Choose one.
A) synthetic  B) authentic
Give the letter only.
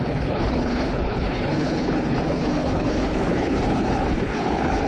A